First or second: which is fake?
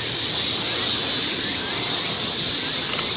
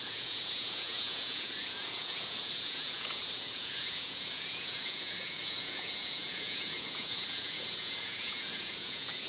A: second